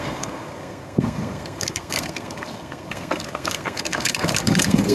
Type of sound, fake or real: fake